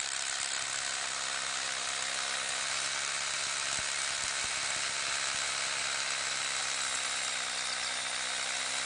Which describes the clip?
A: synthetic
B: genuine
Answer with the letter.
B